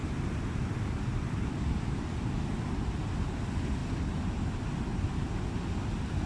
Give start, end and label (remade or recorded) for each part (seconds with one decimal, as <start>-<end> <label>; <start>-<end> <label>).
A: 0.0-6.3 recorded